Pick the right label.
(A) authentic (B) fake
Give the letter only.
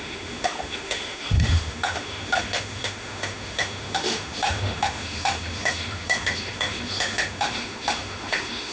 B